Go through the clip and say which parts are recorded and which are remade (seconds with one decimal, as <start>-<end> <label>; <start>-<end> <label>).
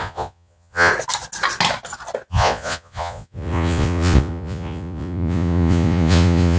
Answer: 0.0-0.9 remade; 0.9-2.3 recorded; 2.3-6.6 remade